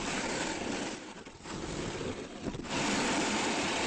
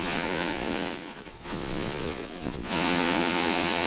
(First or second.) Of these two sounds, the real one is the first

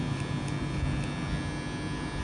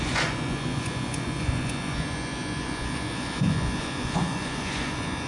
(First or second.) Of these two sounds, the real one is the first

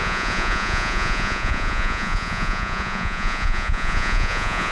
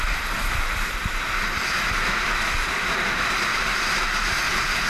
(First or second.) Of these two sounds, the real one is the second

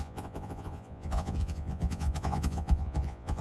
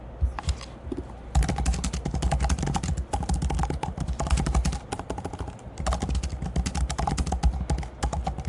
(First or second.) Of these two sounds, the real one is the second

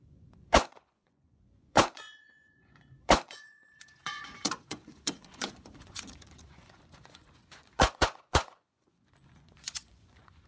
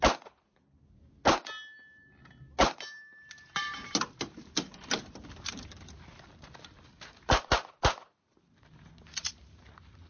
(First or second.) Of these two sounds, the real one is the second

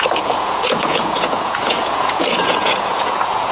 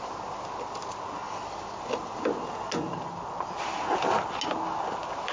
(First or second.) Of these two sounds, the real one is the second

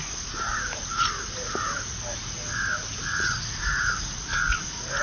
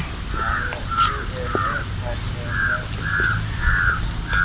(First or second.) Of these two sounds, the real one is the second